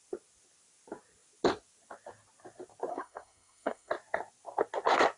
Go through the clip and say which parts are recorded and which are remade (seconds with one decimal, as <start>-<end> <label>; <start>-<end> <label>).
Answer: 0.0-2.9 recorded; 2.9-3.9 remade; 3.9-5.2 recorded